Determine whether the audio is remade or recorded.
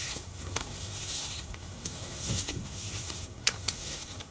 remade